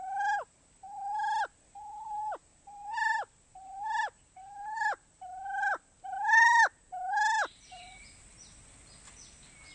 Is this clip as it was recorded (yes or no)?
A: yes